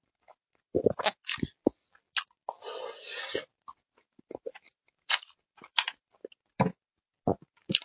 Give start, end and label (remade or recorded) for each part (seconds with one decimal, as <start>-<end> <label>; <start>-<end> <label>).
0.0-1.4 remade; 1.4-3.5 recorded; 3.5-6.6 remade; 6.6-7.8 recorded

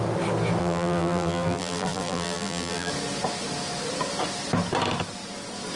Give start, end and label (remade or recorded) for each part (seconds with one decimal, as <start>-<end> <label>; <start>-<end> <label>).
0.0-0.6 recorded; 0.6-2.9 remade; 2.9-5.8 recorded

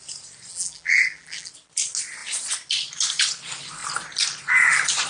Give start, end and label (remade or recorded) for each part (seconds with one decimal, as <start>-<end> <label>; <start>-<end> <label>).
0.0-0.5 recorded; 0.5-1.5 remade; 1.5-5.1 recorded